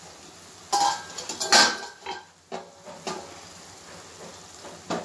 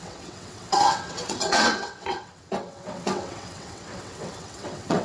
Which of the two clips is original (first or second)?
first